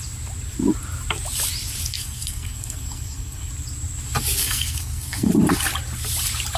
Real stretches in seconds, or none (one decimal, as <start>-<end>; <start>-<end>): 0.0-1.9; 3.5-4.4; 5.3-6.6